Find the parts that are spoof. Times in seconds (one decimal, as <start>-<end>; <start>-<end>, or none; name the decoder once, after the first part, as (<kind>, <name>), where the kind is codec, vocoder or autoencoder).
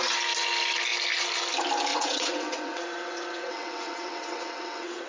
1.9-5.1 (vocoder, WaveNeXt)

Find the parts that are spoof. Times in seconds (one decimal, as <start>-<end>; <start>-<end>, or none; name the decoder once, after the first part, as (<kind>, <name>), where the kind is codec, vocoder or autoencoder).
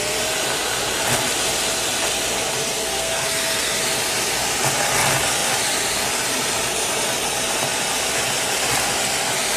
2.8-3.8 (codec, SNAC)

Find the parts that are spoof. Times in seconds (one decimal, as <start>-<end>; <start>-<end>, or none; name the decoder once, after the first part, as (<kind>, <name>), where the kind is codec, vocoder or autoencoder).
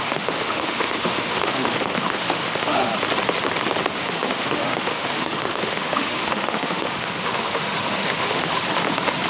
0.0-2.9 (autoencoder, DAC-VAE); 4.0-8.6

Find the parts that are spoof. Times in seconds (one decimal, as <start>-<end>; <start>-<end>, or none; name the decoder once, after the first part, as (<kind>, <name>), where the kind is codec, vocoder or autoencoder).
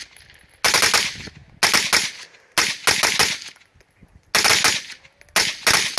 none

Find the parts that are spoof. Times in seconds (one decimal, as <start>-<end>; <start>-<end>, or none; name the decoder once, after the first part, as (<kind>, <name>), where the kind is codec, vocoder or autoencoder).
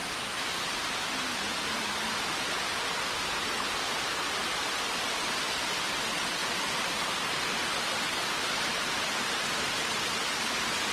6.4-10.9 (vocoder, BigVGAN v2)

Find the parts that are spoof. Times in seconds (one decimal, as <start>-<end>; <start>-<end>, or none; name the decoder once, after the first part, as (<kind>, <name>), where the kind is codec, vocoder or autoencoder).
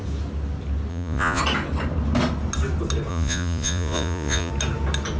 0.9-1.4 (vocoder, Vocos); 3.1-4.5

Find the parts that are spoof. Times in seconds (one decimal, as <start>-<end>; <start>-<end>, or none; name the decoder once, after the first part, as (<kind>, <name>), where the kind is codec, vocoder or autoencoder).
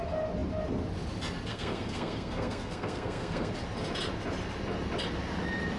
1.5-3.5 (codec, SNAC)